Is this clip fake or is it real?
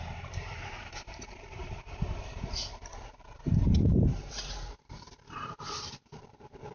fake